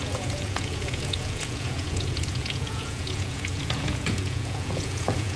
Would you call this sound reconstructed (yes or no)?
yes